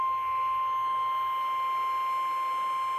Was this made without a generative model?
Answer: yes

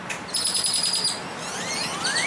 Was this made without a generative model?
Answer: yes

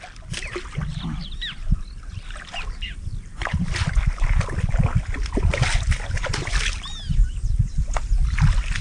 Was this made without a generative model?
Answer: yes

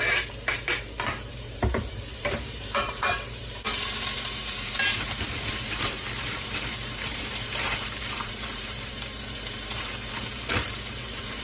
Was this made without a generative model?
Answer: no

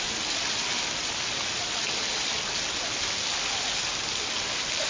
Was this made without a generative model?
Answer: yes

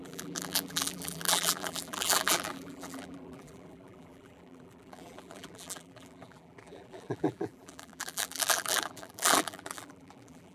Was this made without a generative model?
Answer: no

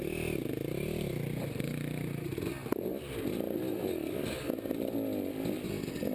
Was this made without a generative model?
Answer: yes